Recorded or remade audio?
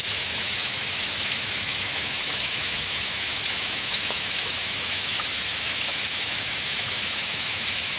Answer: remade